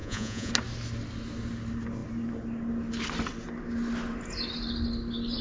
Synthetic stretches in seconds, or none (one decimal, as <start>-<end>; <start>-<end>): 0.0-0.5